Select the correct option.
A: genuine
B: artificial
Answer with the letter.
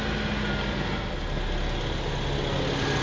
A